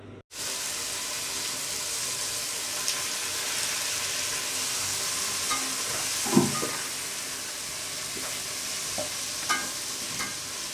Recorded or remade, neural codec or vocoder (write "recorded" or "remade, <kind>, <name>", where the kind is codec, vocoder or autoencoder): recorded